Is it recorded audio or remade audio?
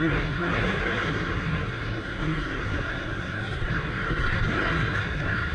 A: remade